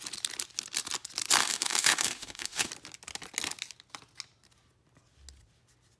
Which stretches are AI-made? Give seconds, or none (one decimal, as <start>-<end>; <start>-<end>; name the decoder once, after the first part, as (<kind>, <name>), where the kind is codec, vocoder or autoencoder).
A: 1.4-2.7 (autoencoder, DAC-VAE)